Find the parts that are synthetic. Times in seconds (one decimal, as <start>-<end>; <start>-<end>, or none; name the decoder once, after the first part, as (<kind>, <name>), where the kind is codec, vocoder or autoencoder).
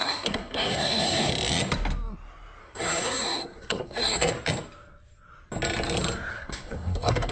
0.0-1.3 (codec, SNAC); 2.6-4.3; 6.3-7.3